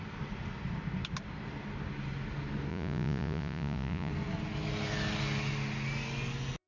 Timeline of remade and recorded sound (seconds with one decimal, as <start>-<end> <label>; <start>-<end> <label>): 0.0-2.7 recorded; 2.7-4.1 remade; 4.1-6.7 recorded